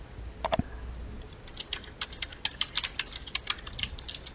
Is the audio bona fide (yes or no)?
yes